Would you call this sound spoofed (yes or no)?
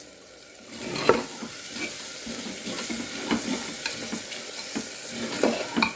no